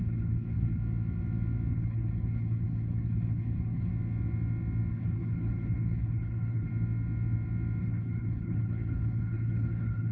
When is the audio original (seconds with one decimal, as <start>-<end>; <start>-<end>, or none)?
0.8-1.7; 3.9-4.9; 6.7-7.8